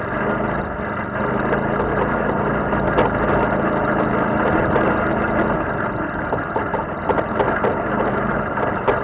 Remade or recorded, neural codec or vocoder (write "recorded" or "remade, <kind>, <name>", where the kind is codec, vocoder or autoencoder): recorded